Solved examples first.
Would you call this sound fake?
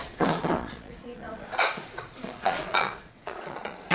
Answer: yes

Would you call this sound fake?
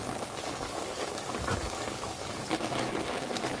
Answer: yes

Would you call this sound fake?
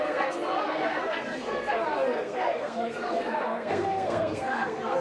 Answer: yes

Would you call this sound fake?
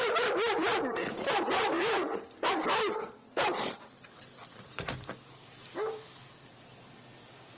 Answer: no